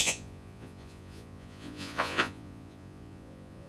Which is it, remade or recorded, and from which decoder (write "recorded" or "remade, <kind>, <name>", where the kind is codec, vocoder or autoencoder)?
remade, vocoder, Vocos